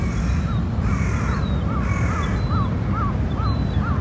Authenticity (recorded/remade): recorded